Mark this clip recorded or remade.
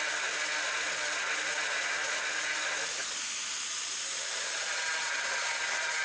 recorded